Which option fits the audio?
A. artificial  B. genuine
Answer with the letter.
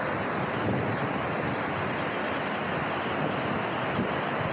B